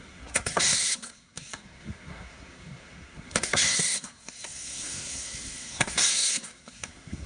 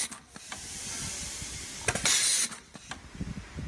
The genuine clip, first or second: second